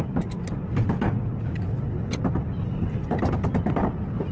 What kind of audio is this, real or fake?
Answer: real